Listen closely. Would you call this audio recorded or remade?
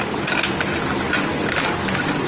recorded